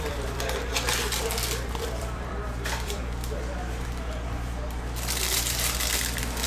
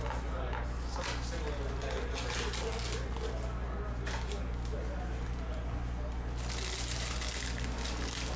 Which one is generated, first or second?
first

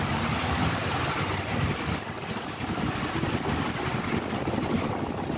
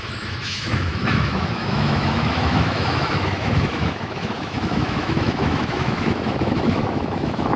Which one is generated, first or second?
second